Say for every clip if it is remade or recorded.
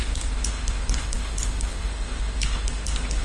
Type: remade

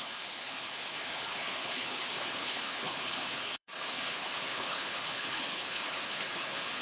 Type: remade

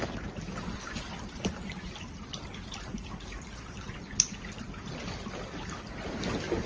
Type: recorded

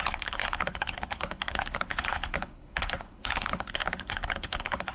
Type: remade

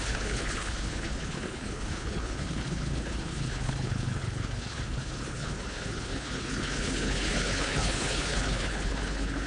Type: remade